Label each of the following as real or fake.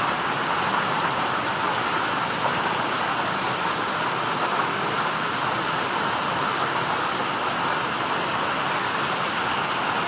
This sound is real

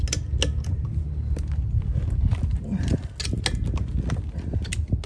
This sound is real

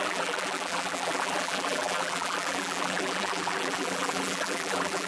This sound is fake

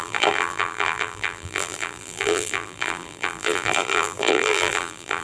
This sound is fake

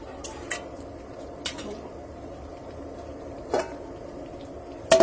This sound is real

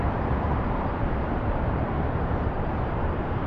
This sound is fake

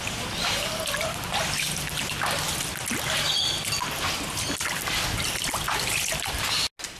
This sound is real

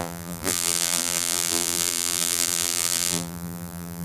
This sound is fake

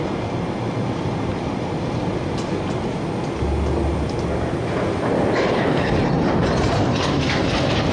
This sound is real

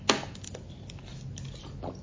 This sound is real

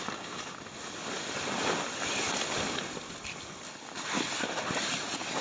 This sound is real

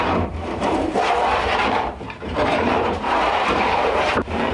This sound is fake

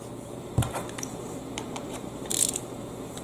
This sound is fake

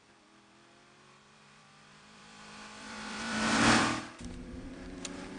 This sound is fake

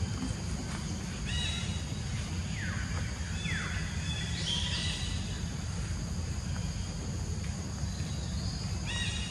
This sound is real